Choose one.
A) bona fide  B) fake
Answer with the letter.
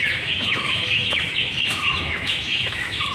B